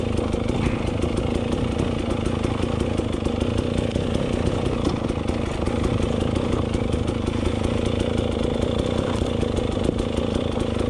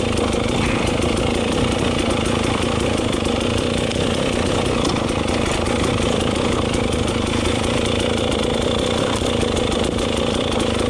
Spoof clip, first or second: second